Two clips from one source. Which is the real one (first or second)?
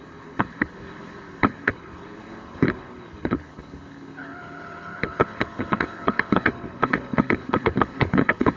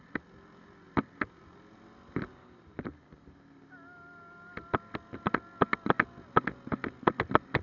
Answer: second